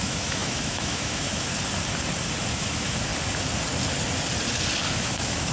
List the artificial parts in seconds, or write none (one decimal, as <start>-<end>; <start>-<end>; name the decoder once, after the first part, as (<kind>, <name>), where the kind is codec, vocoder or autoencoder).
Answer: 0.0-1.5 (autoencoder, DAC-VAE); 2.5-3.1; 4.9-5.5